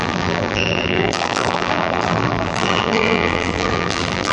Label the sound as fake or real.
fake